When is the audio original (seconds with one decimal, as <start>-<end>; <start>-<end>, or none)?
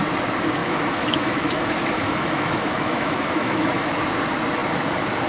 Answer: 0.0-0.6; 3.8-5.3